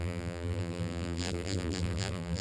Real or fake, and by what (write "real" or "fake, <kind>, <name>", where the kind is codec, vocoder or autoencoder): fake, vocoder, BigVGAN v2